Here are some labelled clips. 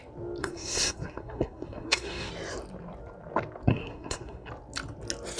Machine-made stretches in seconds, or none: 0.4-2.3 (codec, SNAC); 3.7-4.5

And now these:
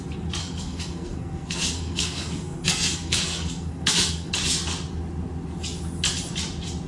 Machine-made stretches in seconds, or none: 0.4-4.3 (codec, SNAC)

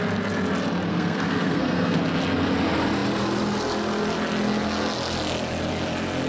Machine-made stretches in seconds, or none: 0.9-2.0 (codec, SNAC)

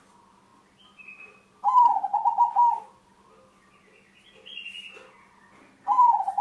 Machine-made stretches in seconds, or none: none

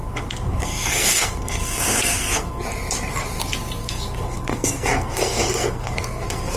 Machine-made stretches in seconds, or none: 0.0-2.6 (codec, SNAC); 3.8-6.6

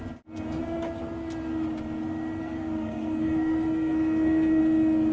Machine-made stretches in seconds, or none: 2.4-4.6 (codec, SNAC)

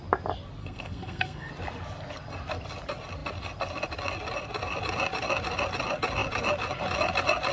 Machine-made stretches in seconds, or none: 0.6-1.5 (codec, SNAC)

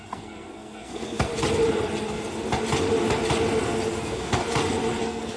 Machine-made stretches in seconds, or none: 0.0-1.3 (codec, SNAC); 4.0-4.4; 5.0-5.4